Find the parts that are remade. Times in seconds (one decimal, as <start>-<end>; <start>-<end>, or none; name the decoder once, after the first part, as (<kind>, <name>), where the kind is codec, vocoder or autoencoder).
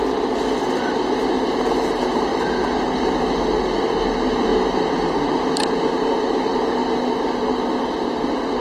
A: none